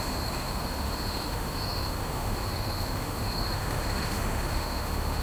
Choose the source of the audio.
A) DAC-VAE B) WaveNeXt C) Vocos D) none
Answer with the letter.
A